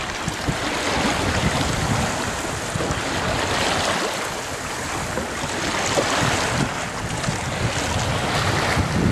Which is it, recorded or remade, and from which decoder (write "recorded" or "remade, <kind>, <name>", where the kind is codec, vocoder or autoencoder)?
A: recorded